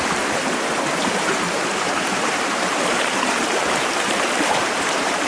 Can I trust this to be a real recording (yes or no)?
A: no